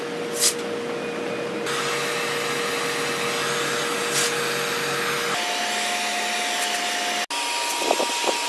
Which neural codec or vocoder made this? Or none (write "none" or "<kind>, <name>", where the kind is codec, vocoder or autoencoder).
none